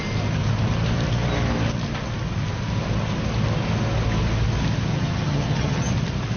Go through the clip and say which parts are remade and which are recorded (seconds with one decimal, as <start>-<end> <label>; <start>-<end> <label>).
0.0-4.9 recorded; 4.9-5.9 remade; 5.9-6.4 recorded